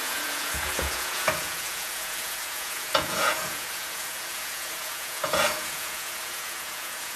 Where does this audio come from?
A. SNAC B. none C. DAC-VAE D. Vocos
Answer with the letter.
D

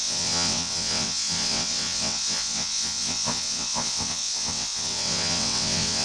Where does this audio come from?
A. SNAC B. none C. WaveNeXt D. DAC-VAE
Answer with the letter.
C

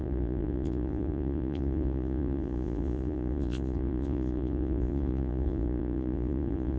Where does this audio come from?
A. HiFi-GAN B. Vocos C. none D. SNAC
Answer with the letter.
B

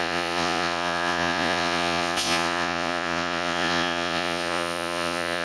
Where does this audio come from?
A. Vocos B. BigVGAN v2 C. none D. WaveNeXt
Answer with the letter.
A